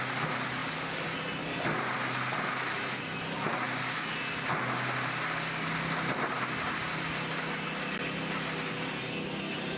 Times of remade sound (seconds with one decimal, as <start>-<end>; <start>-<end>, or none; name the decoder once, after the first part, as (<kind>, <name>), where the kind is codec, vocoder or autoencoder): none